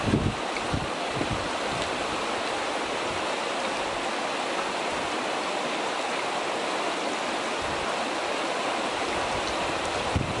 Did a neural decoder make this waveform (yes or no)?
no